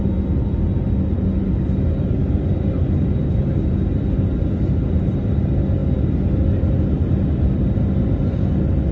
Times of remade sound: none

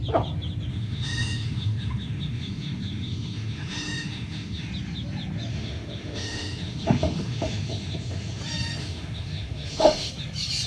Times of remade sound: 0.7-4.7; 5.5-8.4; 8.8-10.1

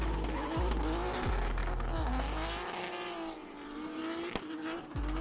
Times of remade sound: 3.4-4.0

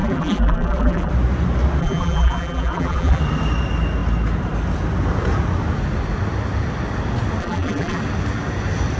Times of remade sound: 0.0-1.1; 1.8-3.2; 7.4-8.0

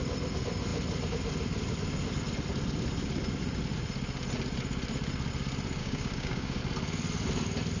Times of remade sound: 5.8-6.6